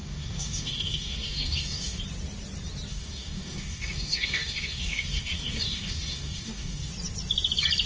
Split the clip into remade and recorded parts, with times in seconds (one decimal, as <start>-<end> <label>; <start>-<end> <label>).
0.0-2.0 remade; 2.0-2.9 recorded; 2.9-6.9 remade; 6.9-7.9 recorded